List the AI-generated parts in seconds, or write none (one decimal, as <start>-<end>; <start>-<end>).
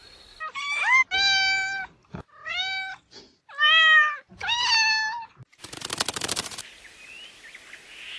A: none